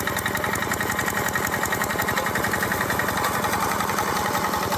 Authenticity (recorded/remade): recorded